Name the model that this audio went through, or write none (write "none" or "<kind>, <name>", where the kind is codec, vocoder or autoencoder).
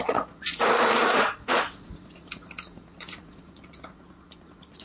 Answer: vocoder, Vocos